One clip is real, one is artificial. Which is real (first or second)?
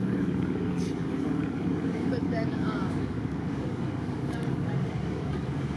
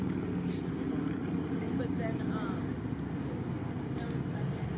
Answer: second